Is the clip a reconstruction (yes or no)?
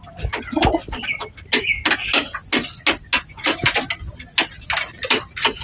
no